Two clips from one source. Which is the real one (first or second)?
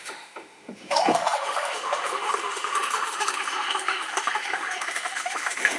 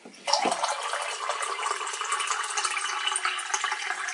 second